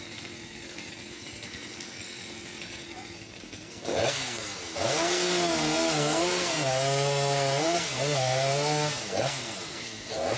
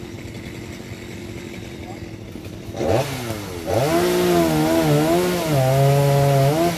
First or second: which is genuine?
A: second